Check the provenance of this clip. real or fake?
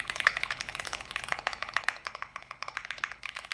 fake